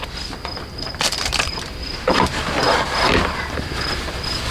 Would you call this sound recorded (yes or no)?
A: yes